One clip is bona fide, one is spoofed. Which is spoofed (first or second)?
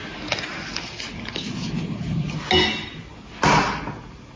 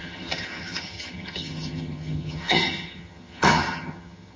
second